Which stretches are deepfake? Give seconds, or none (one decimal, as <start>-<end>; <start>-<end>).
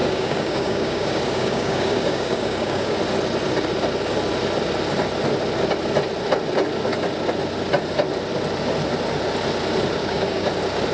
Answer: 0.0-3.0; 10.0-10.5